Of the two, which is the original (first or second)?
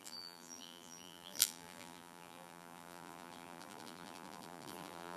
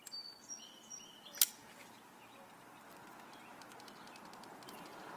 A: second